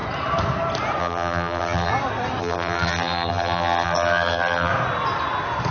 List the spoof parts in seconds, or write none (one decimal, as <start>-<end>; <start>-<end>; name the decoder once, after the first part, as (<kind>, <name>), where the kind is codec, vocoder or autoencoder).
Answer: 1.0-1.9 (vocoder, BigVGAN v2); 2.4-4.7